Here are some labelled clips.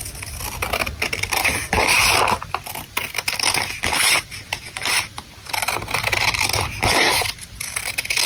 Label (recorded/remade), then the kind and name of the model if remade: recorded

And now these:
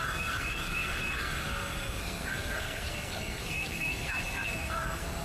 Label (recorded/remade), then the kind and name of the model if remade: remade, codec, SNAC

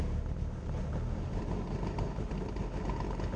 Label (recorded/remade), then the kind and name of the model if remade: recorded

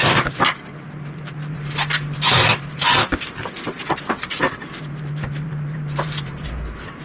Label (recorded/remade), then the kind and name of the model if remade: remade, vocoder, BigVGAN v2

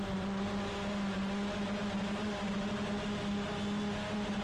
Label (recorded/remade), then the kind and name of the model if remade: recorded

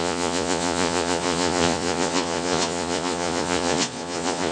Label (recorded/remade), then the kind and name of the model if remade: remade, vocoder, Vocos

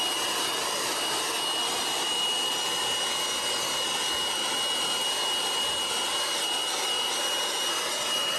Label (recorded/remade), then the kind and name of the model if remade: recorded